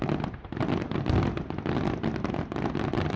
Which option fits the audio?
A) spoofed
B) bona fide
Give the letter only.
B